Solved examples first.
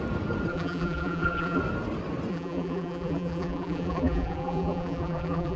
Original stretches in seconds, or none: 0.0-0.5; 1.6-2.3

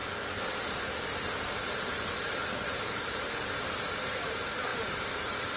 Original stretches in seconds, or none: 0.0-1.4; 1.9-2.7

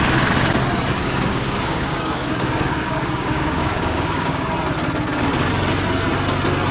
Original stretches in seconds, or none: 0.0-1.0; 4.5-6.7

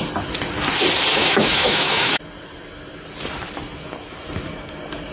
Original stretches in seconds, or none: 0.0-1.1; 2.2-5.1